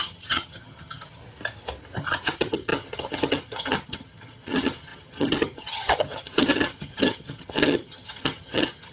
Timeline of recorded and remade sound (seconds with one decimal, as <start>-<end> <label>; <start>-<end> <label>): 0.0-1.2 remade; 1.2-2.0 recorded; 2.0-8.9 remade